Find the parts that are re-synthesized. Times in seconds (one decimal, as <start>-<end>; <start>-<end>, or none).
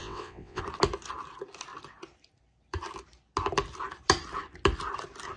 0.0-0.6